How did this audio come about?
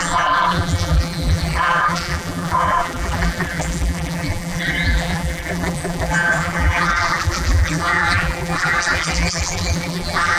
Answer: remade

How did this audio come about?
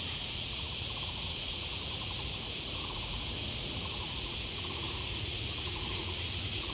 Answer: remade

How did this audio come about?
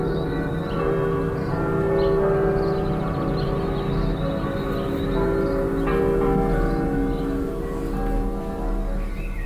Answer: recorded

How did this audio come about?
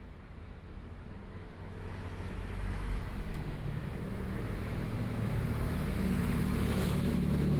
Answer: remade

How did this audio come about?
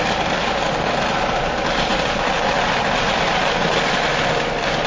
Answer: recorded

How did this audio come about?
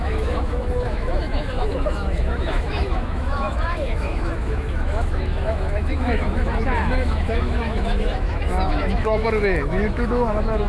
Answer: remade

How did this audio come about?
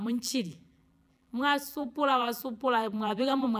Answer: remade